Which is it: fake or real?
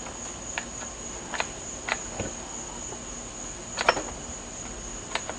real